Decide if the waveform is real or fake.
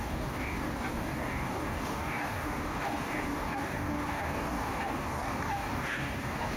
fake